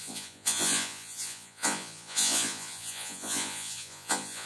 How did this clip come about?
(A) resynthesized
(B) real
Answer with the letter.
A